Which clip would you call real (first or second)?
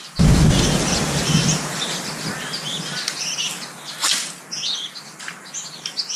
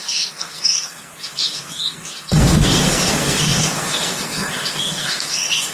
first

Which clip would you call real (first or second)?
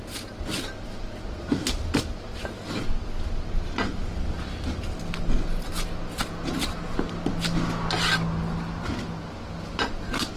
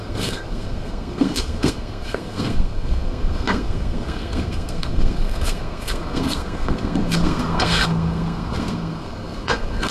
first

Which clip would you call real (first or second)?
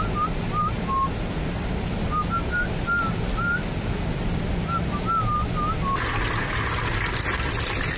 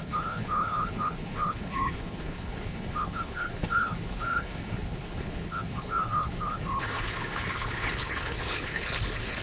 first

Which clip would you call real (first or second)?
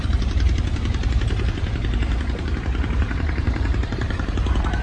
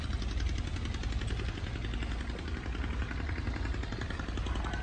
second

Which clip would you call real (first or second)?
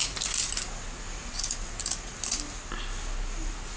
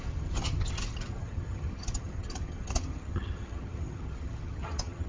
first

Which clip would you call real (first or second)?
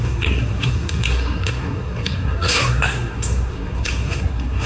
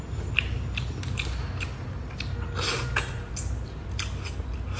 second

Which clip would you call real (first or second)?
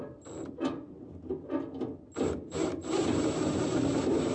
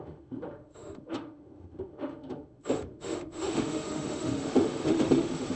first